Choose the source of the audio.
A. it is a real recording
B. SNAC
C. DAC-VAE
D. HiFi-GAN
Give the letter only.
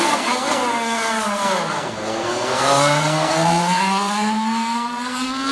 B